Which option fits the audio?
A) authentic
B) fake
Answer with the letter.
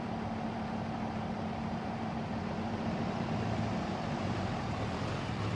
B